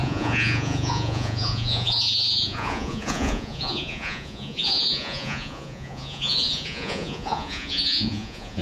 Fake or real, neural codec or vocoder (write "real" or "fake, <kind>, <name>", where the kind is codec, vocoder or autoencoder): fake, vocoder, Vocos